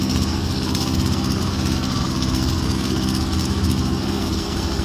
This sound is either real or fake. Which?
fake